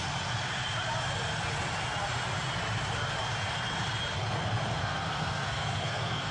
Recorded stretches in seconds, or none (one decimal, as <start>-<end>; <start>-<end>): 0.0-4.8